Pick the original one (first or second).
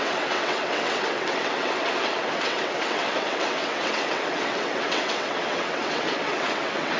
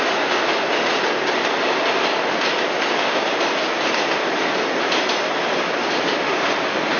second